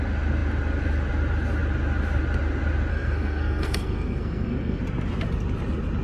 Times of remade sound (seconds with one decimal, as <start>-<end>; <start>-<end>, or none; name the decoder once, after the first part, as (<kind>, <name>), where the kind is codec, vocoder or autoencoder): 2.9-4.8 (codec, SNAC)